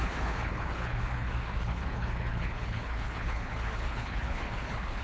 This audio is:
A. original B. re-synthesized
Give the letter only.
B